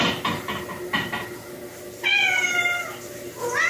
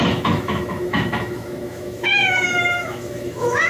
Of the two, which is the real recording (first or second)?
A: first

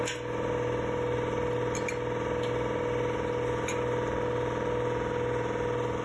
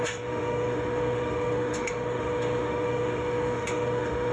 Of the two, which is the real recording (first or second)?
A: first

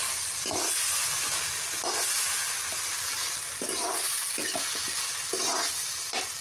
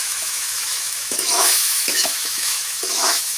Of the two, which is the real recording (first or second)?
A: first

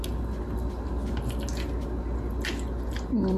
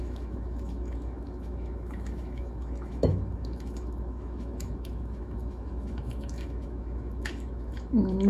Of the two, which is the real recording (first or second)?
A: first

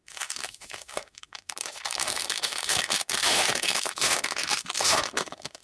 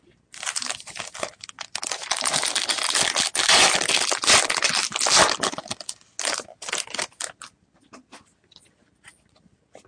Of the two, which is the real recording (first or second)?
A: second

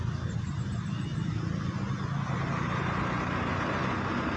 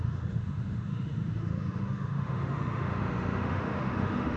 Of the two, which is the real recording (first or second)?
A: first